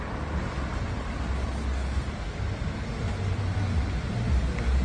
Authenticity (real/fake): real